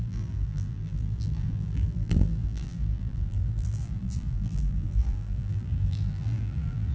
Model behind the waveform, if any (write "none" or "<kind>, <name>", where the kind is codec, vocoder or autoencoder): vocoder, BigVGAN v2